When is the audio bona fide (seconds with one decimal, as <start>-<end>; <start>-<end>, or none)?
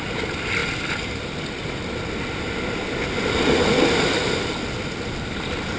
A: 0.0-5.8